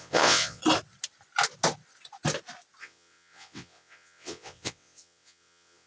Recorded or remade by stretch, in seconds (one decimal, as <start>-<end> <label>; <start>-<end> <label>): 0.0-0.6 remade; 0.6-2.8 recorded; 2.8-5.9 remade